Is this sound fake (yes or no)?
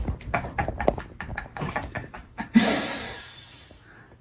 yes